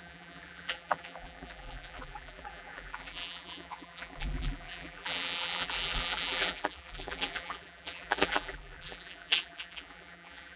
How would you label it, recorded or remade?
remade